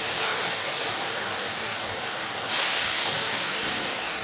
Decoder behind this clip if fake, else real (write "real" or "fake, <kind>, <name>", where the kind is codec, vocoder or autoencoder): fake, codec, DAC